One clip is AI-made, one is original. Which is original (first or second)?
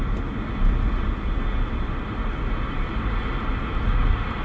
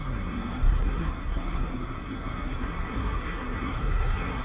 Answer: first